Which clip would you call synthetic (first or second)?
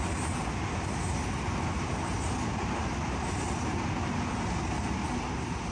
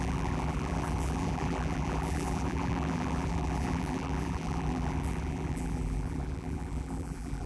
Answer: second